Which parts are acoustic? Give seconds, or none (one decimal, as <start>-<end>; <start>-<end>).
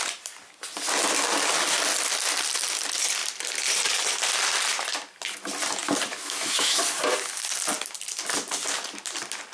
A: 0.0-6.1; 6.8-9.5